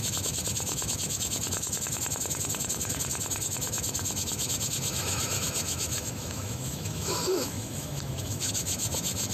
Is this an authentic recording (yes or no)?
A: no